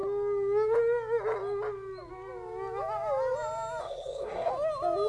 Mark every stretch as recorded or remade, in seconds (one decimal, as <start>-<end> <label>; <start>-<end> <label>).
0.0-3.8 recorded; 3.8-4.5 remade; 4.5-5.1 recorded